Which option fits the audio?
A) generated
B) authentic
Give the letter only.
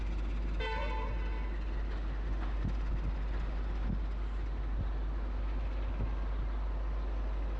B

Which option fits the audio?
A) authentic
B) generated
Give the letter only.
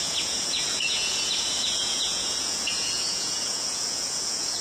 B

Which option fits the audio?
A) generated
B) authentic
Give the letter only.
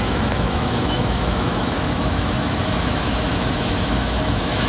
A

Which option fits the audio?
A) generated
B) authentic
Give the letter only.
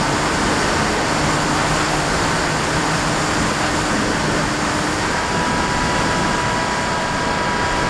B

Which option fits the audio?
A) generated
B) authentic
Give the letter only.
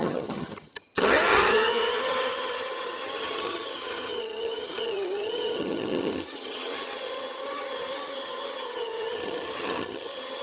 A